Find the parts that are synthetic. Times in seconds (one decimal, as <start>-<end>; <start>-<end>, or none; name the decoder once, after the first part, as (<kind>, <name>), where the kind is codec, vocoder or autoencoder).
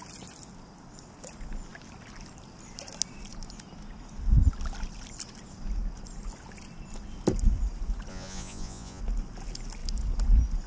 8.1-9.0 (vocoder, Vocos)